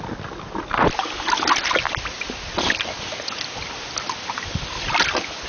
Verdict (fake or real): real